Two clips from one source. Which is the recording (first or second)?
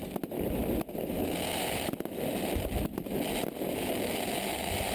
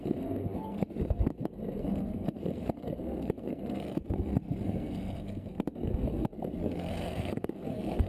first